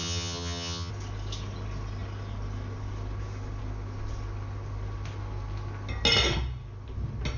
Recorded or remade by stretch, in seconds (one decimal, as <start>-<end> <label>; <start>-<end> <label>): 0.0-0.9 remade; 0.9-7.4 recorded